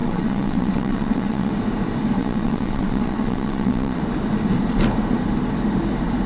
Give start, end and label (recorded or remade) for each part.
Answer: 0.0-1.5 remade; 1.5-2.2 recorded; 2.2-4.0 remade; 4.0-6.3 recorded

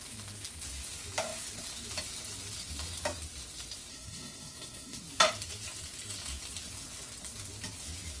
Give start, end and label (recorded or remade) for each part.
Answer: 0.0-3.9 recorded; 3.9-5.0 remade; 5.0-8.2 recorded

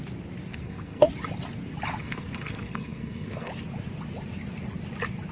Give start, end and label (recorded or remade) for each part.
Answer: 0.0-0.5 recorded; 0.5-1.1 remade; 1.1-2.0 recorded; 2.0-3.5 remade; 3.5-5.3 recorded

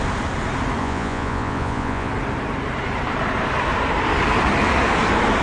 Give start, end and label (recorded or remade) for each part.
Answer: 0.0-0.8 recorded; 0.8-2.1 remade; 2.1-5.4 recorded

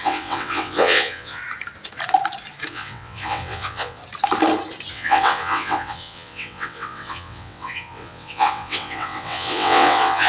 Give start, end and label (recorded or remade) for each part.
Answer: 0.0-1.4 remade; 1.4-2.7 recorded; 2.7-4.0 remade; 4.0-4.9 recorded; 4.9-10.3 remade